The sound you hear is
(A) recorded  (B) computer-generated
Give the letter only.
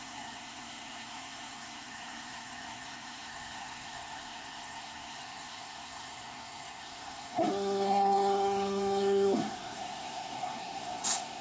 B